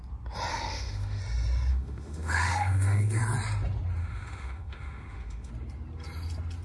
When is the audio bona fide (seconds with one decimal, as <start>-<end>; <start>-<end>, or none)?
0.0-0.5; 1.2-1.7; 3.2-4.0; 5.5-6.6